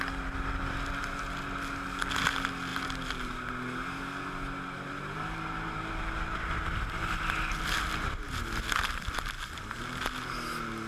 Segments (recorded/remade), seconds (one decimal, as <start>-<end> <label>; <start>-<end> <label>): 0.0-10.9 recorded